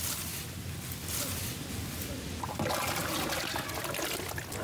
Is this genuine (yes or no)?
yes